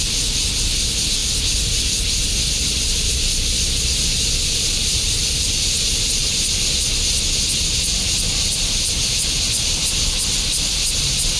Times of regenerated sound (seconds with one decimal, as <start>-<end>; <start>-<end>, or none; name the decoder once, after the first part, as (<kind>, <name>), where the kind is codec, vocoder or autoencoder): none